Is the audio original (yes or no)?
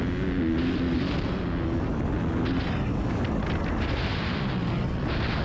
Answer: yes